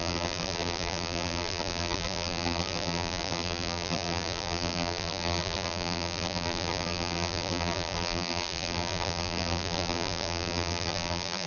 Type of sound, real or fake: fake